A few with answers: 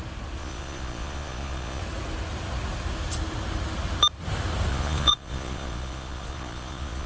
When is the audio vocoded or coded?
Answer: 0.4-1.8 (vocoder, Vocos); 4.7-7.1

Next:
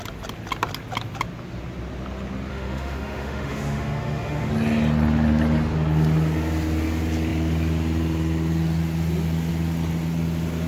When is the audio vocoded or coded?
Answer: 2.5-4.5 (autoencoder, DAC-VAE)